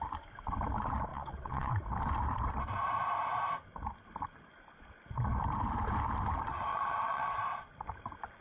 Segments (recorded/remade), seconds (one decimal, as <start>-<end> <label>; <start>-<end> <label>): 0.0-1.1 recorded; 1.1-1.7 remade; 1.7-6.7 recorded; 6.7-7.4 remade; 7.4-8.4 recorded